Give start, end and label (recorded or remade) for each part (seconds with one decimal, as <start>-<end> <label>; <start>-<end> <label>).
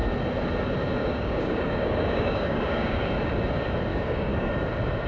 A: 0.0-1.0 recorded; 1.0-3.1 remade; 3.1-3.9 recorded; 3.9-4.5 remade; 4.5-5.1 recorded